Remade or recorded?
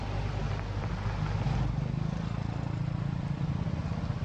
recorded